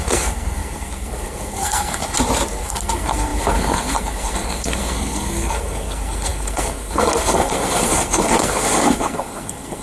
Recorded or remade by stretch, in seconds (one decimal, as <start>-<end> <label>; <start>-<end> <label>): 0.0-2.0 remade; 2.0-2.6 recorded; 2.6-9.8 remade